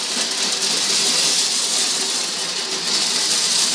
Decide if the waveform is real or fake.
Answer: fake